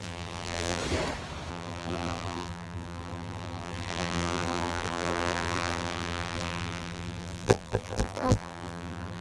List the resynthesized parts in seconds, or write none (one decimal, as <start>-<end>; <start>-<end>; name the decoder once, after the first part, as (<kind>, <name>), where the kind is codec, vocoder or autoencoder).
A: 0.0-0.8 (vocoder, BigVGAN v2); 1.5-9.2